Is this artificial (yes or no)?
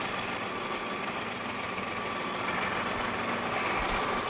no